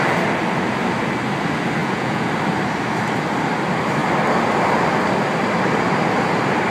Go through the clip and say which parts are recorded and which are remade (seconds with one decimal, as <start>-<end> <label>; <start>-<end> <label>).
0.0-1.8 recorded; 1.8-2.3 remade; 2.3-6.7 recorded